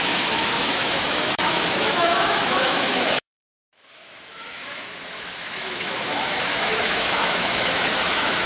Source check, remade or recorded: remade